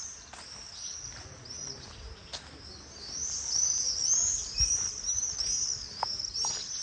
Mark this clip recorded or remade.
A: recorded